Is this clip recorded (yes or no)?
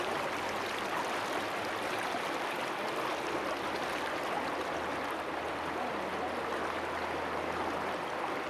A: yes